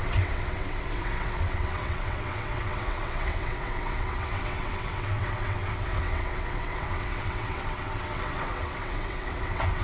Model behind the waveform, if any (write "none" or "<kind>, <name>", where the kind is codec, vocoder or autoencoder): vocoder, WaveNeXt